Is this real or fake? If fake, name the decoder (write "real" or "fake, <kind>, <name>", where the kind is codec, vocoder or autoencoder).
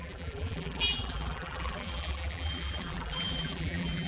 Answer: fake, vocoder, BigVGAN v2